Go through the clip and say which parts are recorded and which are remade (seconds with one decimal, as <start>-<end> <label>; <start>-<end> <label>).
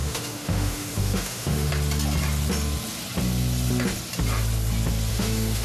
0.0-1.7 remade; 1.7-5.1 recorded; 5.1-5.6 remade